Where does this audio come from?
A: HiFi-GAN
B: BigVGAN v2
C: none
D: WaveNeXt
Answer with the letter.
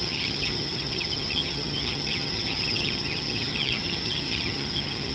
A